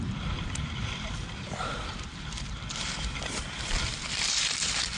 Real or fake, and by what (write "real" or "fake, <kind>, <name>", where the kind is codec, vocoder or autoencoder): fake, vocoder, BigVGAN v2